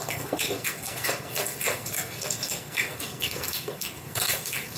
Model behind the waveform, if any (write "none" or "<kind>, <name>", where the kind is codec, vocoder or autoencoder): codec, SNAC